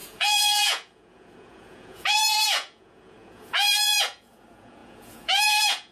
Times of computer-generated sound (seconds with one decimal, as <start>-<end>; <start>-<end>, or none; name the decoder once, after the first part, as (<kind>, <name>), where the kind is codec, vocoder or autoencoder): 0.0-5.9 (vocoder, Vocos)

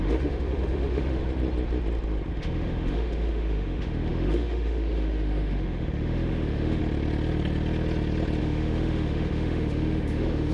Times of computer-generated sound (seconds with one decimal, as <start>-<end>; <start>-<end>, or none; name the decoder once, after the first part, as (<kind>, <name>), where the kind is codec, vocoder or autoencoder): 0.0-1.2 (autoencoder, DAC-VAE); 2.3-6.8; 8.4-10.5

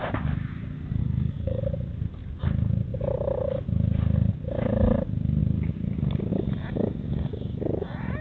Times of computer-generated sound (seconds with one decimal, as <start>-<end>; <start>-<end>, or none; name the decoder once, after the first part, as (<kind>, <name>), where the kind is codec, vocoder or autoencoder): 1.0-1.6 (codec, SNAC)